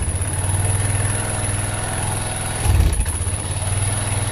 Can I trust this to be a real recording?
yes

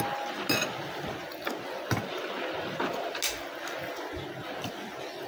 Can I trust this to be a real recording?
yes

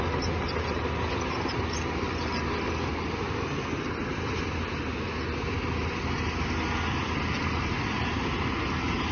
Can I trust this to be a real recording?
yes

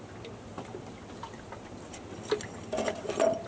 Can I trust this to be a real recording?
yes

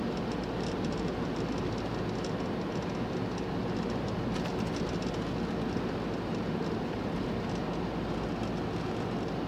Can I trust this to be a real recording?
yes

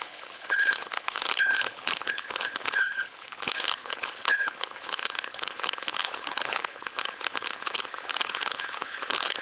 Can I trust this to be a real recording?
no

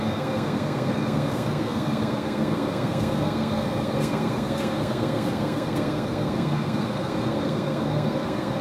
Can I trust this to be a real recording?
no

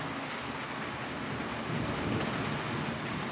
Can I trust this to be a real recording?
yes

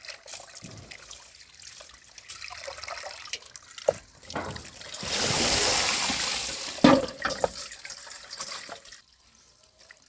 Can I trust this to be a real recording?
yes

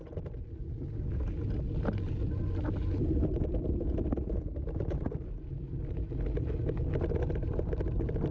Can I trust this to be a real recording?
yes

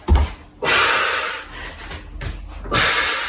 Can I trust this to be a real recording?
yes